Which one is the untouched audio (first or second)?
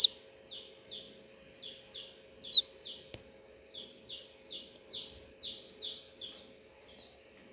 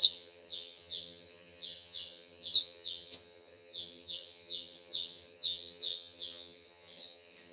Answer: first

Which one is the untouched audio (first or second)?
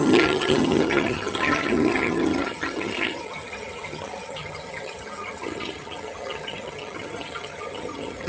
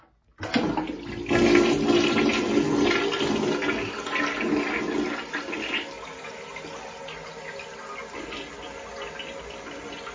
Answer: second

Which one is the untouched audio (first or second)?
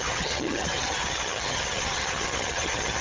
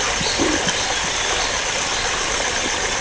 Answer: second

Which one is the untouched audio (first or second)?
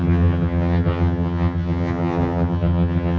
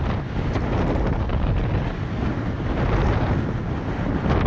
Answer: second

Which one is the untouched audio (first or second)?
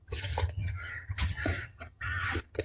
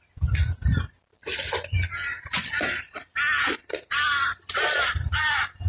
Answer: second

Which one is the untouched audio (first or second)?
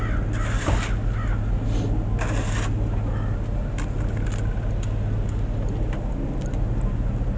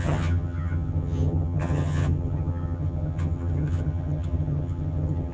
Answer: first